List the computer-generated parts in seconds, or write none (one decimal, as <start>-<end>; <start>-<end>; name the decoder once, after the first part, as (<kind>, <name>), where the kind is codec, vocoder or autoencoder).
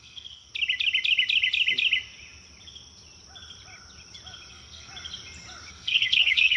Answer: 0.0-0.5 (codec, SNAC); 4.5-4.9; 5.7-6.6